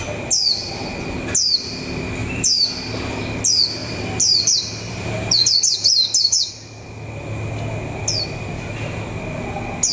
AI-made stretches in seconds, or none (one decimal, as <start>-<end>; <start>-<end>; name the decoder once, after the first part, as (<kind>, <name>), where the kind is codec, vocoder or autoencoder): 2.2-2.7 (vocoder, BigVGAN v2); 3.8-6.5